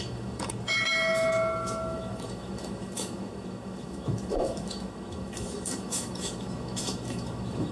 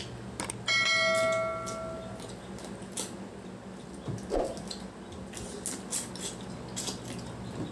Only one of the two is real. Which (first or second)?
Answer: second